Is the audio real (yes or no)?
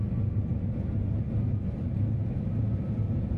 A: yes